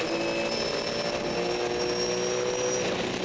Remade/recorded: recorded